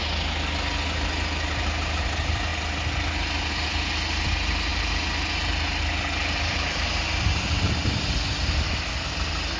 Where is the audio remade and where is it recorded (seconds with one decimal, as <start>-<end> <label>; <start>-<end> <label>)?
0.0-9.6 recorded